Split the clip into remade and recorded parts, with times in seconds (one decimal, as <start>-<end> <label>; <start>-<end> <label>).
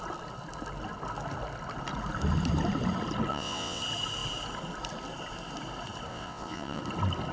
0.0-3.3 recorded; 3.3-3.8 remade; 3.8-6.1 recorded; 6.1-6.8 remade; 6.8-7.3 recorded